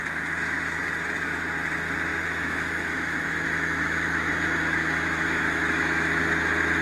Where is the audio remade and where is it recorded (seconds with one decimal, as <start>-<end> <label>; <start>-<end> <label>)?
0.0-2.1 recorded; 2.1-6.2 remade; 6.2-6.8 recorded